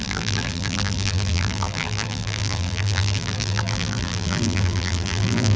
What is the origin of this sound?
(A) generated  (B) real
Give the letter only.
A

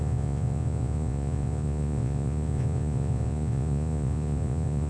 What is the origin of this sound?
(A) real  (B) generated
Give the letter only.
B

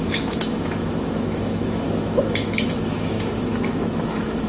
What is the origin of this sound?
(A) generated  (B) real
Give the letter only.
A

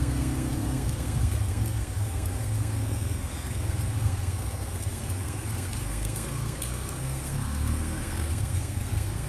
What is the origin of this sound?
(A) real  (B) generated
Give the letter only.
B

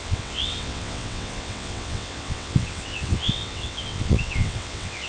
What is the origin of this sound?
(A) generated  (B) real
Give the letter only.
A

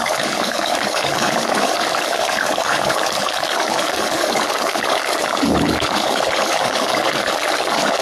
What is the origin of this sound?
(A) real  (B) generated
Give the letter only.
B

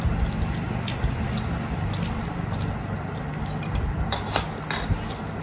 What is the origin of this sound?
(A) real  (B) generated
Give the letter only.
A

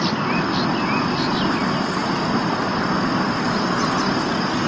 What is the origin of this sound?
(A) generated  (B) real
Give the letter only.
B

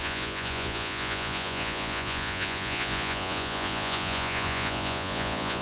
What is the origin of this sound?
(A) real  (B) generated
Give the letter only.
B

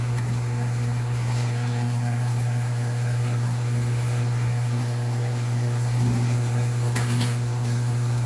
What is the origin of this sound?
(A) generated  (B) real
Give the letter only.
A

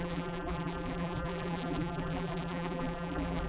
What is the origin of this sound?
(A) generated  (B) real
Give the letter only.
A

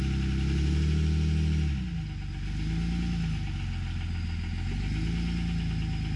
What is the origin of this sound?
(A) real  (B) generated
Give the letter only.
A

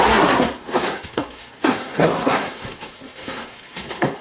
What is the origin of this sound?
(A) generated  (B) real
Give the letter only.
A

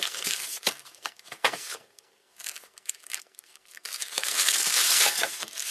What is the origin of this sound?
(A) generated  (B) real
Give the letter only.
A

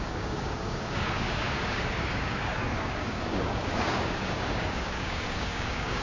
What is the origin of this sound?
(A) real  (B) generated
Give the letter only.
B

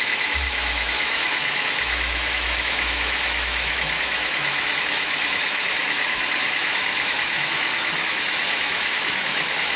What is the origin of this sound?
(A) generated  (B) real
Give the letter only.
A